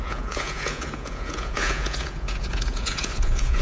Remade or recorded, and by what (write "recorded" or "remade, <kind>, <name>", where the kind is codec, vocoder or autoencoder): remade, vocoder, Vocos